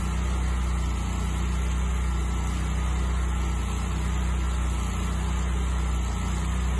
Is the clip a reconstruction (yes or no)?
no